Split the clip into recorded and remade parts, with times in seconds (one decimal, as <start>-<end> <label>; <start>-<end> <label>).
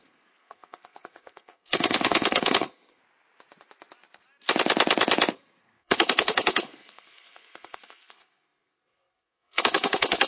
0.0-3.0 remade; 3.0-5.3 recorded; 5.3-10.3 remade